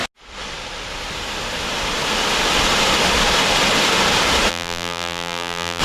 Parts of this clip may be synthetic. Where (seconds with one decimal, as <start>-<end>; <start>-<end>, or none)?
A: 4.5-5.8